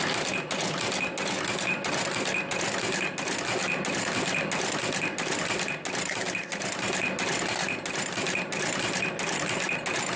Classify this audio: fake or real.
real